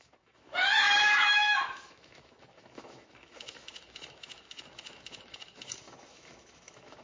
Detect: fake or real fake